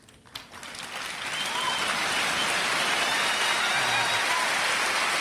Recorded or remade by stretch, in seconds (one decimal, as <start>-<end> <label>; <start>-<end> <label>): 0.0-5.2 recorded